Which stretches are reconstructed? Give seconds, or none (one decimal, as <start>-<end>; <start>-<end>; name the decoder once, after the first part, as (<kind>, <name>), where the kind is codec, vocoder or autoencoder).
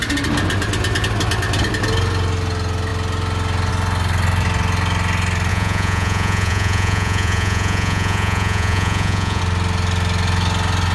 5.5-9.4 (vocoder, Vocos)